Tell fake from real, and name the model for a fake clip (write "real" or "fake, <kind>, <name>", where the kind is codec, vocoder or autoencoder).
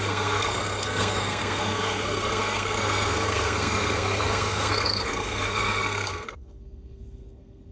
fake, codec, SNAC